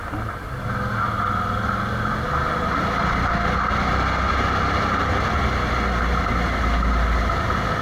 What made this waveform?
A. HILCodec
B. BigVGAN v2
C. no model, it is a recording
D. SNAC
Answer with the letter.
C